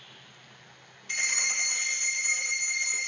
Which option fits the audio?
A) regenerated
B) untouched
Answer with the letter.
B